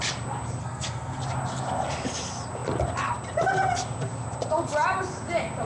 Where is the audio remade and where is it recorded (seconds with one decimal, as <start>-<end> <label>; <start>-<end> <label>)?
0.0-0.6 recorded; 0.6-1.2 remade; 1.2-5.6 recorded